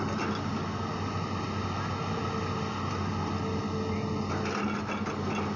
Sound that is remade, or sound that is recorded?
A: recorded